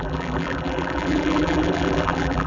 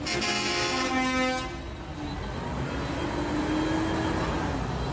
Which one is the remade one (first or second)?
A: first